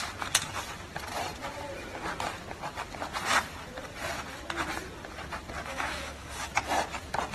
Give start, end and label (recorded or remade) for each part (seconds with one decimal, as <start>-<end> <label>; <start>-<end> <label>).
0.0-5.7 recorded; 5.7-6.5 remade; 6.5-7.3 recorded